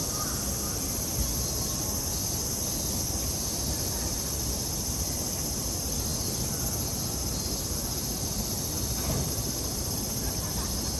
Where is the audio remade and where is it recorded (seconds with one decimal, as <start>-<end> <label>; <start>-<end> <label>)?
0.0-2.0 recorded; 2.0-6.1 remade; 6.1-7.4 recorded; 7.4-11.0 remade